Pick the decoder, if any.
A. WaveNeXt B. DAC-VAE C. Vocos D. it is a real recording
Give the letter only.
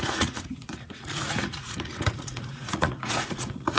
C